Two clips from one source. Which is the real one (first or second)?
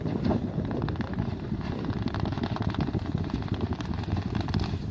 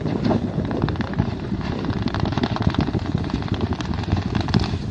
first